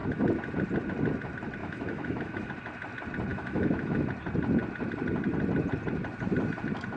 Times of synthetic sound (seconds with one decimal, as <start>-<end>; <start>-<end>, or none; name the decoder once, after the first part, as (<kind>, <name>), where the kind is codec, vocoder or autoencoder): 1.6-2.5 (autoencoder, DAC-VAE); 3.3-4.0